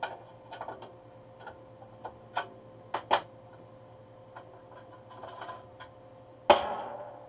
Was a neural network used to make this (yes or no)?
no